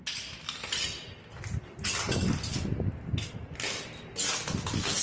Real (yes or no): yes